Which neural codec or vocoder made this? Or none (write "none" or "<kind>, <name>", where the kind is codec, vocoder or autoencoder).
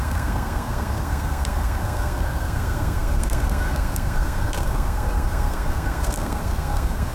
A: codec, SNAC